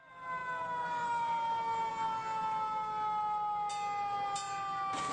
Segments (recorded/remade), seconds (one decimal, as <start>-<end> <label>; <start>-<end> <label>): 0.0-5.1 recorded